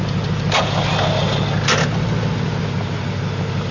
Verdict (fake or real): real